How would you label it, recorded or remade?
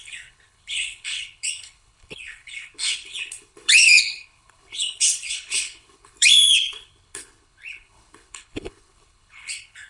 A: remade